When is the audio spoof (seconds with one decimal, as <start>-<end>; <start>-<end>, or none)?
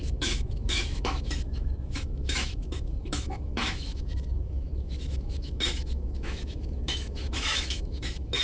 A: 0.0-8.4